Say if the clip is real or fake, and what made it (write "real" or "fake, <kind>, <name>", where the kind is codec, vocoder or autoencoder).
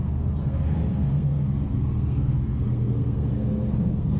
fake, codec, SNAC